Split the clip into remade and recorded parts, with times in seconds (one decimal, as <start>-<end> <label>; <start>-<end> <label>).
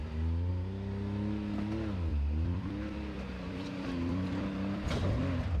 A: 0.0-0.5 remade; 0.5-2.1 recorded; 2.1-5.6 remade